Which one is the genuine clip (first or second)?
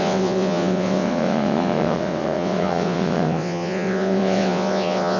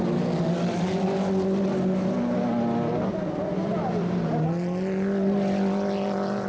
second